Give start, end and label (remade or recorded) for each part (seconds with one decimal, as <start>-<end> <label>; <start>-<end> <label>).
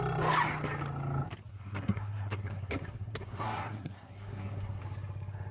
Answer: 0.0-1.5 recorded; 1.5-4.8 remade; 4.8-5.5 recorded